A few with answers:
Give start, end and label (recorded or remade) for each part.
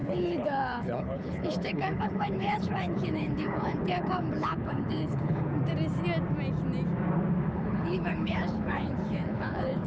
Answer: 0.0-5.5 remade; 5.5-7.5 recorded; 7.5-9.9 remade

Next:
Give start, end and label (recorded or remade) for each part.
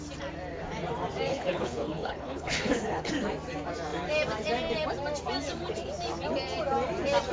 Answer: 0.0-1.3 recorded; 1.3-3.1 remade; 3.1-7.3 recorded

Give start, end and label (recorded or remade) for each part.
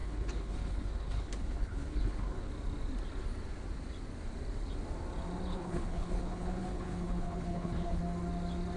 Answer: 0.0-2.5 remade; 2.5-5.5 recorded; 5.5-8.0 remade; 8.0-8.8 recorded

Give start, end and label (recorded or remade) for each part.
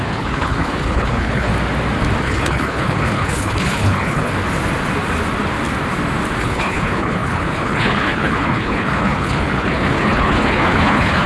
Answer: 0.0-1.5 remade; 1.5-2.2 recorded; 2.2-4.3 remade; 4.3-6.4 recorded; 6.4-11.3 remade